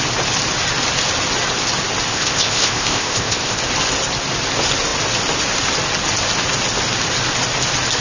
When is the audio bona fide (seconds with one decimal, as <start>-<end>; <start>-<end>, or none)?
0.0-2.1; 3.6-8.0